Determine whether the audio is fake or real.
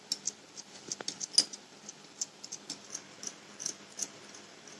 real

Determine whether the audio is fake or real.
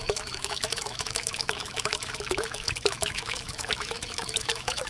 fake